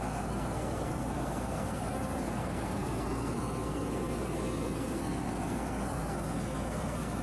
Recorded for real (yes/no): no